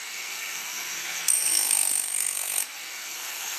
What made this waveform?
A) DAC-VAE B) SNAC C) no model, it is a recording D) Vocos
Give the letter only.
B